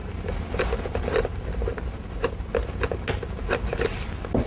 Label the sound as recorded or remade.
recorded